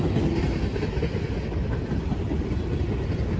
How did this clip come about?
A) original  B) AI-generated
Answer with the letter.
A